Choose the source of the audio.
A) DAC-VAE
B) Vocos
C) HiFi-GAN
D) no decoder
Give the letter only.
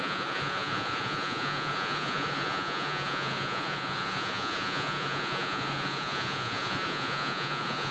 B